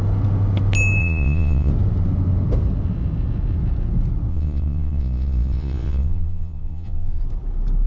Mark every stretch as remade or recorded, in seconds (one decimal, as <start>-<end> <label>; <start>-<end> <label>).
0.0-1.0 recorded; 1.0-1.7 remade; 1.7-4.3 recorded; 4.3-7.2 remade; 7.2-7.9 recorded